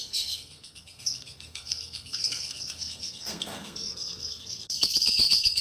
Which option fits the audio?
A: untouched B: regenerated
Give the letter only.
B